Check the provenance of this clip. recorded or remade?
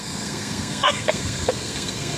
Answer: remade